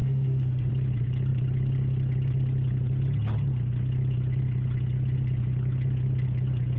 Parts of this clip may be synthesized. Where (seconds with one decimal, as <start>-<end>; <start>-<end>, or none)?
0.0-0.7